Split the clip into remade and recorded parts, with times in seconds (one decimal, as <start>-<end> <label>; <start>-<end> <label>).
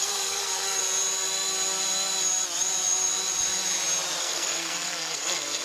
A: 0.0-0.8 remade; 0.8-4.2 recorded; 4.2-5.6 remade